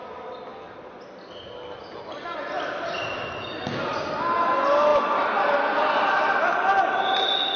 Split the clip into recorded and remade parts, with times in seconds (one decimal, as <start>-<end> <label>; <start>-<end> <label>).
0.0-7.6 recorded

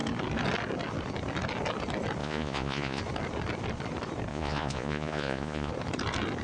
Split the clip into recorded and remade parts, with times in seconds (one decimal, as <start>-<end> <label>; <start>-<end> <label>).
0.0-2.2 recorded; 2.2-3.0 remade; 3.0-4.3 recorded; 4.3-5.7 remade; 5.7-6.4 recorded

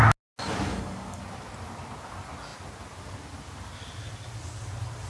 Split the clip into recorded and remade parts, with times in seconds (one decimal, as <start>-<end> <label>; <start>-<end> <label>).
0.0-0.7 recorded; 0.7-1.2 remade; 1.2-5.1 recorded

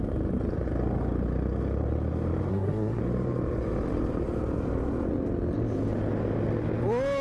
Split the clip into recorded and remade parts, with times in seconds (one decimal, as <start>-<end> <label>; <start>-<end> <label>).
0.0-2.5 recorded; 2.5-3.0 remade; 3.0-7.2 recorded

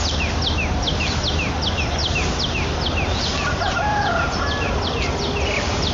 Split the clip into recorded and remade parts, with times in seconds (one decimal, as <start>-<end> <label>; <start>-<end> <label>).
0.0-3.9 recorded; 3.9-4.7 remade; 4.7-5.9 recorded